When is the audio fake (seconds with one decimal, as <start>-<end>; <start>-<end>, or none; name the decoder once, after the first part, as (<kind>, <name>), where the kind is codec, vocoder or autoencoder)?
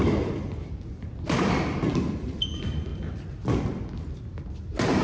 none